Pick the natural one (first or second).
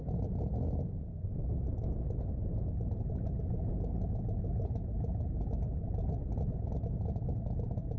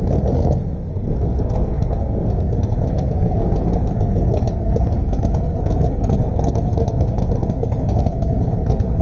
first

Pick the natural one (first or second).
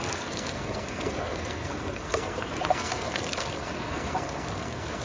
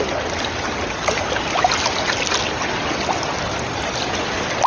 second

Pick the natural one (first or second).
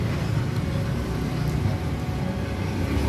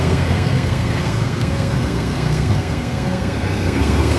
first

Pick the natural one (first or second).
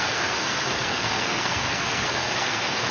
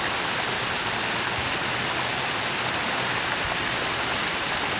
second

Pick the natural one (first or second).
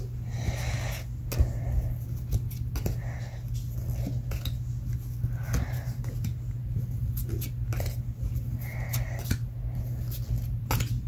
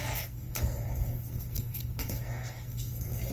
first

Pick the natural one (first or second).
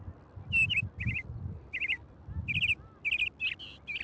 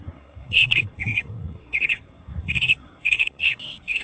first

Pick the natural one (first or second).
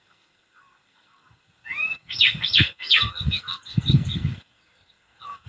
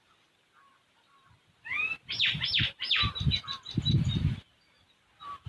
second